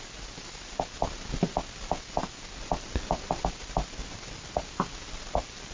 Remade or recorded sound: recorded